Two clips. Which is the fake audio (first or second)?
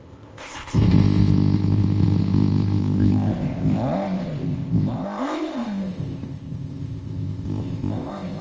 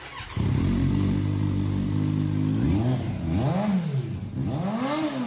first